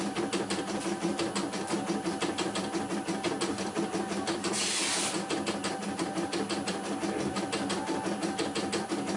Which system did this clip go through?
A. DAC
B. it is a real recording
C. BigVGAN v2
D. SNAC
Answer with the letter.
B